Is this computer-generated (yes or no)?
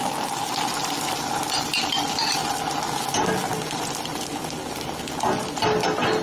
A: no